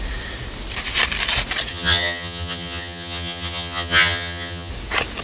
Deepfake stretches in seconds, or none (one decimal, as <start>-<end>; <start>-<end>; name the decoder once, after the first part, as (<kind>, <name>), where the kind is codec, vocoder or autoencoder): 1.7-4.7 (vocoder, HiFi-GAN)